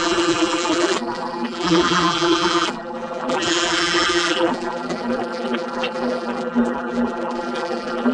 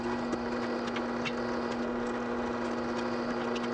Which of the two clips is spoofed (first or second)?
first